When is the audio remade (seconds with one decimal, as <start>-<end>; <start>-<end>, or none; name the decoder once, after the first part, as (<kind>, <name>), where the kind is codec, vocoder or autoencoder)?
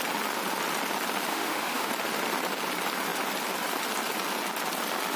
1.3-1.9 (autoencoder, DAC-VAE)